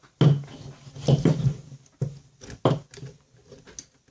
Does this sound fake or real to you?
real